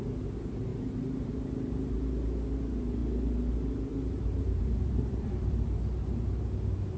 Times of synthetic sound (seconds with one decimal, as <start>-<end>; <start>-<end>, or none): 0.7-1.3; 3.9-6.1